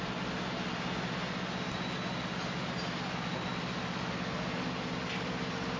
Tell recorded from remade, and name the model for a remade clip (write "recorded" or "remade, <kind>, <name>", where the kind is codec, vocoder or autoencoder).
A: recorded